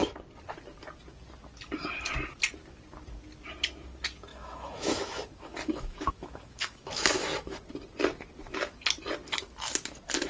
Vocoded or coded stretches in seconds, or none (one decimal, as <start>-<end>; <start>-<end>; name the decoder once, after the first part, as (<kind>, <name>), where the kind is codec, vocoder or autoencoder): 4.3-7.6 (autoencoder, DAC-VAE)

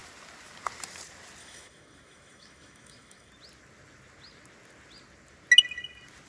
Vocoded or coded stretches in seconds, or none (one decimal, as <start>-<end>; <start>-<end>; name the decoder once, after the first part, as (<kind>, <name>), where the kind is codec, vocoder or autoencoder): 1.4-3.3 (autoencoder, DAC-VAE)

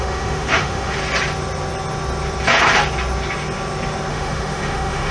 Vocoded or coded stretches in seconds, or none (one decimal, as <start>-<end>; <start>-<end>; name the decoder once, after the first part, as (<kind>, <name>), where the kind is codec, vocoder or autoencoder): 0.0-1.0 (autoencoder, DAC-VAE); 4.1-5.1